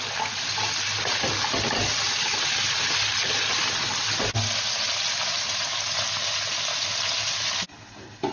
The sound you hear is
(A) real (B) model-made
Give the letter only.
A